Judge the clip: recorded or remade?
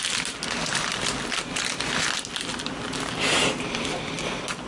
recorded